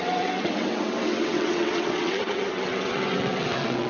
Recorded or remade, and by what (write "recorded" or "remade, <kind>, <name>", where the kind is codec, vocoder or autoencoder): remade, vocoder, WaveNeXt